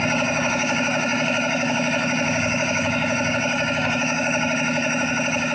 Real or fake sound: fake